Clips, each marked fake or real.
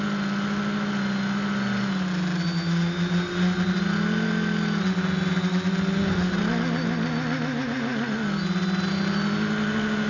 real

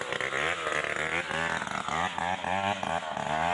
real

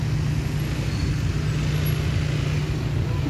real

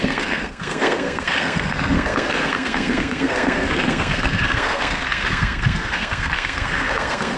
fake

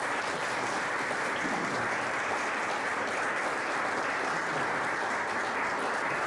real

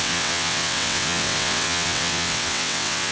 fake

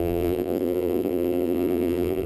fake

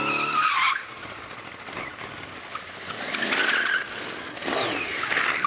real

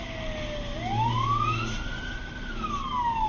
real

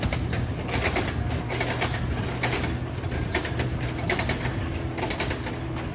real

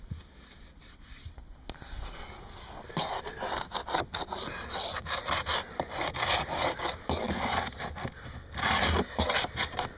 real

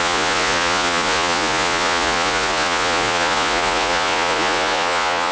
fake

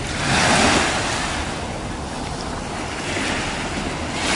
real